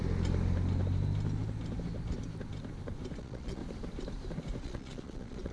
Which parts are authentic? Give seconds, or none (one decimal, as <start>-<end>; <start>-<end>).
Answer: 0.0-3.2; 3.6-4.6